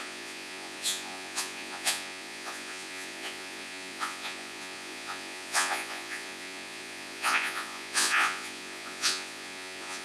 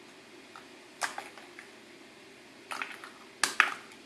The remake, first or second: first